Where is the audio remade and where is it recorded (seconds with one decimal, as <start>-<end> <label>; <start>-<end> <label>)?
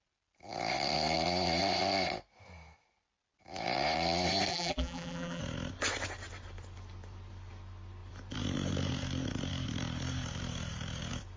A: 0.0-4.5 recorded; 4.5-5.4 remade; 5.4-11.4 recorded